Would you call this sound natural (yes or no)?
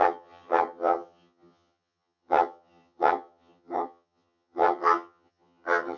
no